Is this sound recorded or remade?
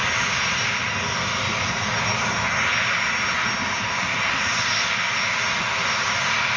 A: recorded